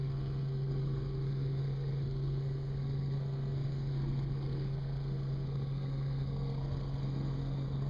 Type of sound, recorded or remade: remade